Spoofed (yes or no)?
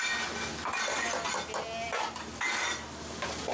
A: no